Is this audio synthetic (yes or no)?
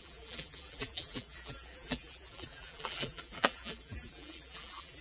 yes